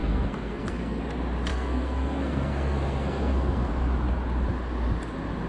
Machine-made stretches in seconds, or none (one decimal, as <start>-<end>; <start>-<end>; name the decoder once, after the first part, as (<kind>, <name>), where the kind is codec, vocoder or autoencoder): 0.0-1.0 (codec, SNAC); 1.5-3.7